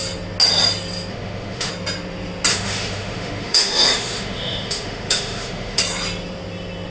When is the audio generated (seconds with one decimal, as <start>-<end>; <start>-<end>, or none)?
1.1-1.7; 2.5-5.8

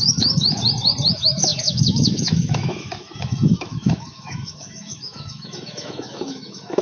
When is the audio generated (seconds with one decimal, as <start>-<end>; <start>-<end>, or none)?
0.0-0.6; 1.1-6.8

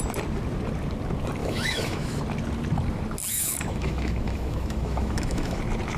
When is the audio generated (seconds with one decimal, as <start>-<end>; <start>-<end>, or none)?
1.4-2.2; 3.3-5.6

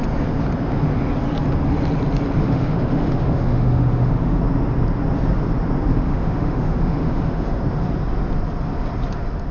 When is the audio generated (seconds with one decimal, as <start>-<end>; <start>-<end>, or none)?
2.4-4.4; 5.9-7.6